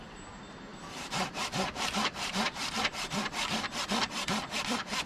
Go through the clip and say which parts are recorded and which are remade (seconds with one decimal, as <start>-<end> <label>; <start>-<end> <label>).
0.0-0.7 recorded; 0.7-2.8 remade; 2.8-5.1 recorded